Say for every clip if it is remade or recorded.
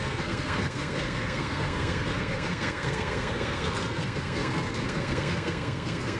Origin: remade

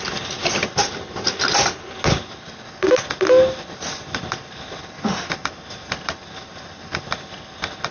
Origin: recorded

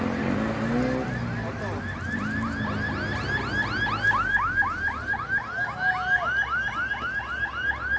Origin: recorded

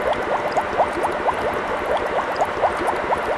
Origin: recorded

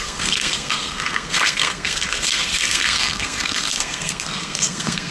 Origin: remade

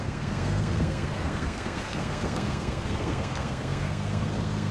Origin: remade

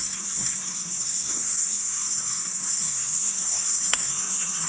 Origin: remade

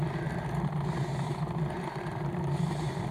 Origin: recorded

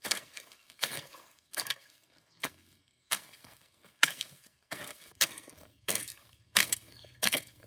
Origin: remade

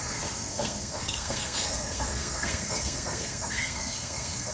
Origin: remade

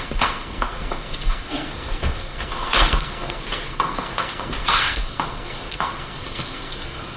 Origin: remade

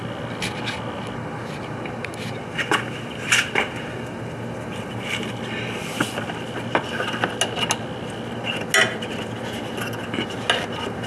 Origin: recorded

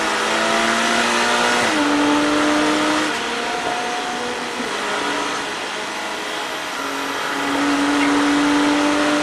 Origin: recorded